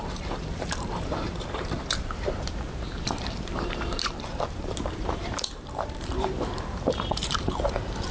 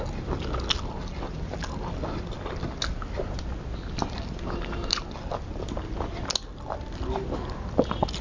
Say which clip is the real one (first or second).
second